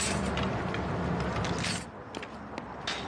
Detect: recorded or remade recorded